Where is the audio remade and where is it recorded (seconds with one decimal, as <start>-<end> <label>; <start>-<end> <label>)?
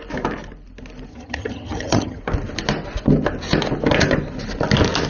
0.0-1.1 recorded; 1.1-2.2 remade; 2.2-5.1 recorded